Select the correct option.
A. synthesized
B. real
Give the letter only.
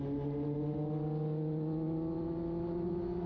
B